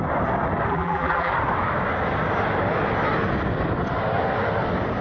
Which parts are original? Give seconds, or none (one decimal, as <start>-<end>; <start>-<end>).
0.0-0.7; 1.3-5.0

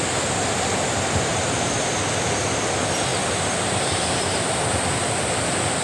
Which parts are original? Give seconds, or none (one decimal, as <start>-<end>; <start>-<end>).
0.0-1.3; 2.0-3.1; 4.6-5.8

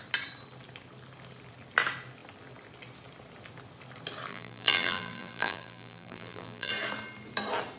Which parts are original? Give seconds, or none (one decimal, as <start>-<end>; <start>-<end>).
0.0-4.3; 6.7-7.8

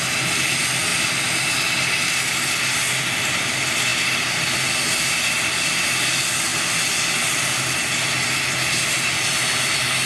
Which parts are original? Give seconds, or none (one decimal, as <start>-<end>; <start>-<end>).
0.0-10.1

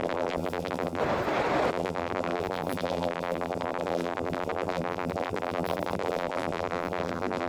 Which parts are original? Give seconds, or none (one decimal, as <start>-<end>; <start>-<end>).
1.0-1.7

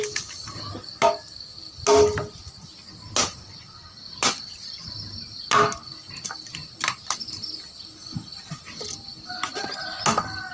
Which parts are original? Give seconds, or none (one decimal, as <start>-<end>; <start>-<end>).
0.0-6.6; 8.5-10.5